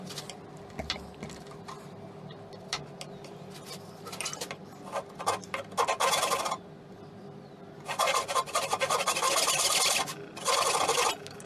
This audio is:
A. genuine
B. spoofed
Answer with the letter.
A